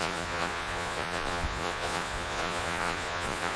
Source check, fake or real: fake